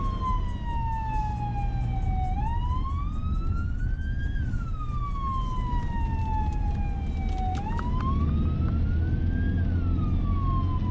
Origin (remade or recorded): recorded